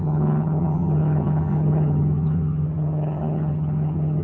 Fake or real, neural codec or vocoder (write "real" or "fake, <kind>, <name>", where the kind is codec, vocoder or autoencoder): fake, vocoder, HiFi-GAN